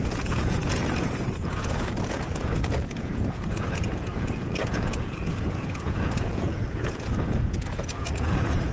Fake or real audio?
fake